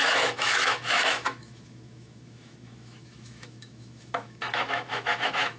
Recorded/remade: remade